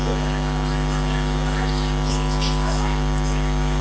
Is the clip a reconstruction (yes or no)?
no